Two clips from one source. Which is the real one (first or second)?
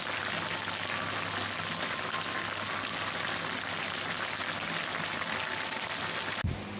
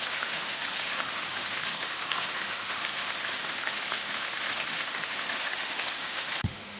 first